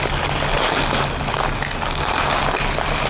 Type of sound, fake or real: real